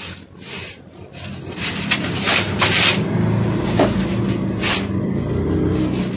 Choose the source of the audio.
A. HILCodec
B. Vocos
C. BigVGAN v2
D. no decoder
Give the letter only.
D